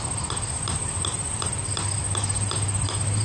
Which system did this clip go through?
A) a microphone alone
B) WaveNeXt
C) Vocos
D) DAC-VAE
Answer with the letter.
A